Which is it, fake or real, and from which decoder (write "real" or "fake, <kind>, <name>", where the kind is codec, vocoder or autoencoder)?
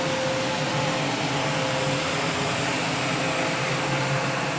real